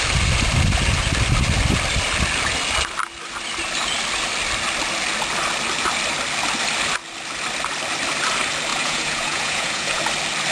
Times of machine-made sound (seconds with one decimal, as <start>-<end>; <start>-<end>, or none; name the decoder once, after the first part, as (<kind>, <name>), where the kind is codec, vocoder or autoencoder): 8.7-10.0 (vocoder, Vocos)